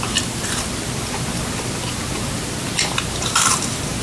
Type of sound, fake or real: real